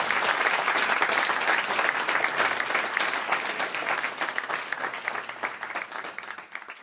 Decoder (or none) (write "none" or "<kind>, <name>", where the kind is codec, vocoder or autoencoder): none